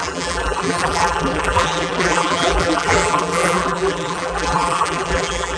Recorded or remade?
remade